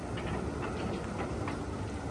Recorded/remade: recorded